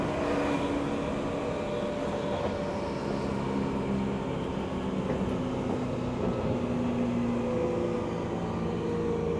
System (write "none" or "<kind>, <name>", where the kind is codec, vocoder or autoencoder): none